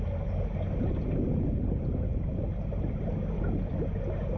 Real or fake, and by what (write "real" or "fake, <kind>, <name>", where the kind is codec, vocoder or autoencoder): real